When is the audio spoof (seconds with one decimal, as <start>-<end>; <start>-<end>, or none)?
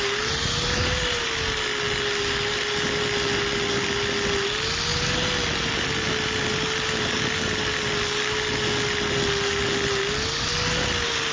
none